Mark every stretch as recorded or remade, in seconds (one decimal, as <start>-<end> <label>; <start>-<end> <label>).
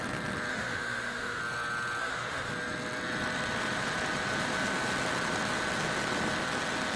0.0-0.5 recorded; 0.5-1.4 remade; 1.4-2.0 recorded; 2.0-2.5 remade; 2.5-7.0 recorded